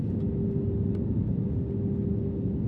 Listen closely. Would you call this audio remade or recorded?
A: recorded